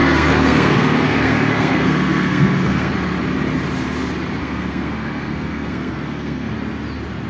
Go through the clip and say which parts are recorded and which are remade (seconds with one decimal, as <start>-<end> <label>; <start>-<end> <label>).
0.0-2.9 remade; 2.9-4.4 recorded; 4.4-6.5 remade; 6.5-7.3 recorded

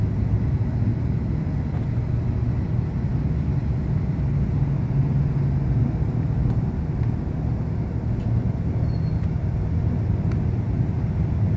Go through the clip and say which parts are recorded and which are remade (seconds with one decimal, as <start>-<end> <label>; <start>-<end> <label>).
0.0-11.6 recorded

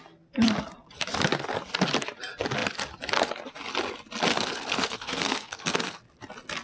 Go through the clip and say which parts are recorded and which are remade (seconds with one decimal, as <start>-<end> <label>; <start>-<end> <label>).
0.0-4.3 recorded; 4.3-6.0 remade; 6.0-6.6 recorded

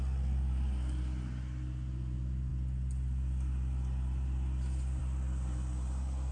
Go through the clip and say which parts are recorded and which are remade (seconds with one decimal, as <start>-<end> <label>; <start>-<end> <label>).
0.0-6.3 recorded

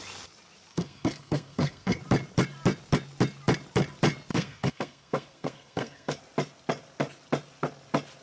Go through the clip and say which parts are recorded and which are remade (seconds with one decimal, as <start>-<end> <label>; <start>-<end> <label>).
0.0-0.7 recorded; 0.7-2.0 remade; 2.0-4.3 recorded; 4.3-6.2 remade; 6.2-8.2 recorded

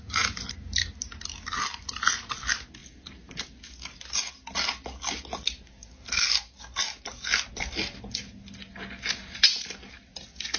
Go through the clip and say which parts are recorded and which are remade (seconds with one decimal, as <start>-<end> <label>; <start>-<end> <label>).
0.0-10.6 recorded

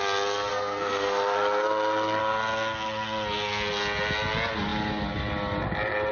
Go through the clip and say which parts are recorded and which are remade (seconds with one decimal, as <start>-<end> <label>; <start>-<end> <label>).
0.0-0.5 recorded; 0.5-2.2 remade; 2.2-6.1 recorded

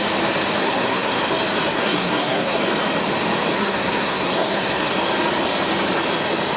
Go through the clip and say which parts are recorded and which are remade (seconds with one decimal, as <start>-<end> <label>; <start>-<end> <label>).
0.0-0.6 recorded; 0.6-1.2 remade; 1.2-1.7 recorded; 1.7-2.6 remade; 2.6-3.5 recorded; 3.5-4.9 remade; 4.9-6.6 recorded